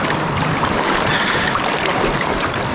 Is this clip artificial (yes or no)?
no